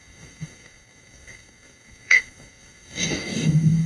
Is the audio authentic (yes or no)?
no